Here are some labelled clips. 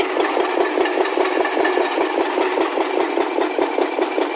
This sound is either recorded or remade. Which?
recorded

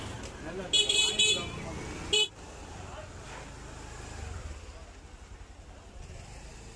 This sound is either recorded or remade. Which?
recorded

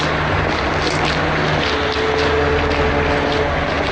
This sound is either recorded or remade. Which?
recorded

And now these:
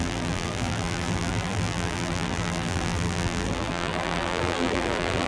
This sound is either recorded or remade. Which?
remade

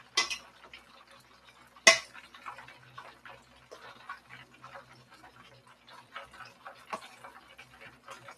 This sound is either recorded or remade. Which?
recorded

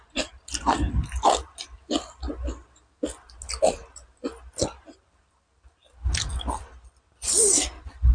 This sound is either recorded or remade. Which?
recorded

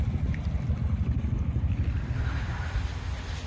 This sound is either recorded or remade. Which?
recorded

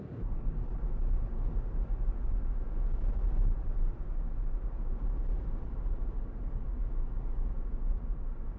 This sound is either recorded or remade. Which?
recorded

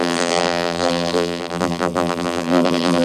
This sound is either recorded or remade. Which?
remade